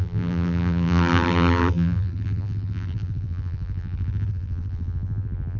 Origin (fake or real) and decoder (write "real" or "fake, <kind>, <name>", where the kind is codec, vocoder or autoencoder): fake, vocoder, BigVGAN v2